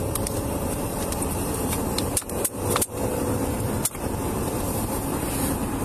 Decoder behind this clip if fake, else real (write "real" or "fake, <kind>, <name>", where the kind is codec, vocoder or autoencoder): fake, vocoder, BigVGAN v2